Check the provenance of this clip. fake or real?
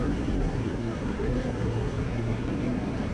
fake